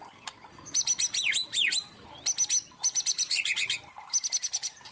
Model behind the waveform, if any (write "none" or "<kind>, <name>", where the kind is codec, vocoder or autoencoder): none